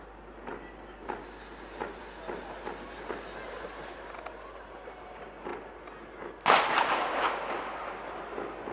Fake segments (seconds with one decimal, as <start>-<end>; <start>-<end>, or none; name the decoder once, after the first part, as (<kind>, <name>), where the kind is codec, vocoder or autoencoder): none